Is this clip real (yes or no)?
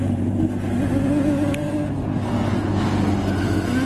yes